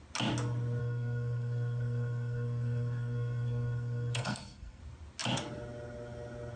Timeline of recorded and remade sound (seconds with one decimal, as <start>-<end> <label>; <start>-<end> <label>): 0.0-0.8 recorded; 0.8-4.8 remade; 4.8-6.6 recorded